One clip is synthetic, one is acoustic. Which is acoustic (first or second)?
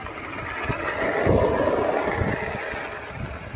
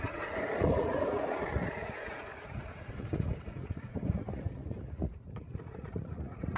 first